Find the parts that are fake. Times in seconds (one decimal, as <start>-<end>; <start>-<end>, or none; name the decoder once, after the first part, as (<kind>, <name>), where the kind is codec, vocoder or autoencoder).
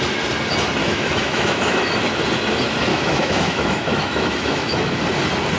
0.8-2.0 (autoencoder, DAC-VAE); 2.9-5.0